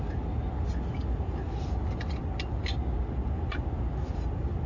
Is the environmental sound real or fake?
real